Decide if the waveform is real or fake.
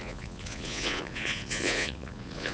fake